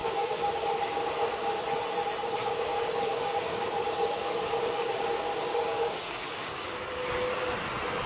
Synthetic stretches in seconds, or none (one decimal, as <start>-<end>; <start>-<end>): 0.0-1.6; 2.4-7.2